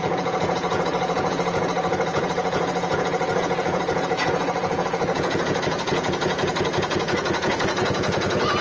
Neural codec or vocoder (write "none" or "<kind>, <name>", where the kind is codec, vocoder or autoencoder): vocoder, Vocos